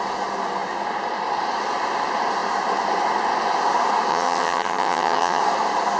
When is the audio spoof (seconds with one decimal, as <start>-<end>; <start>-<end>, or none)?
4.1-5.4